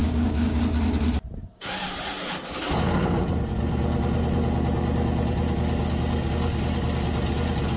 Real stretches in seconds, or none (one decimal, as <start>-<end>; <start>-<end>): 0.6-7.8